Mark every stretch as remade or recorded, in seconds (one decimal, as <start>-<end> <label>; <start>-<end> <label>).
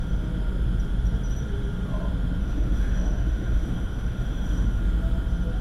0.0-2.4 recorded; 2.4-4.8 remade; 4.8-5.6 recorded